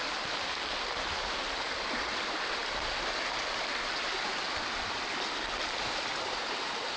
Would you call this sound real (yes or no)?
yes